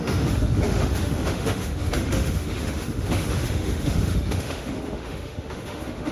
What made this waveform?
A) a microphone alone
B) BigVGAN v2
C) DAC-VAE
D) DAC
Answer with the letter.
C